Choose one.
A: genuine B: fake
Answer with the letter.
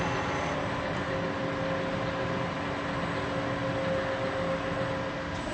A